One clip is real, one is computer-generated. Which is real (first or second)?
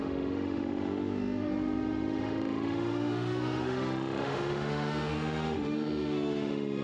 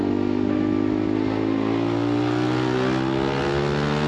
second